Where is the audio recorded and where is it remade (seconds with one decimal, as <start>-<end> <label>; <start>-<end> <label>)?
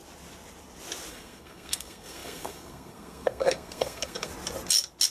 0.0-1.1 recorded; 1.1-4.3 remade; 4.3-5.1 recorded